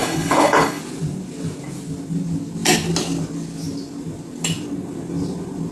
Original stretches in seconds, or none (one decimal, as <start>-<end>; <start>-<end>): 0.8-5.7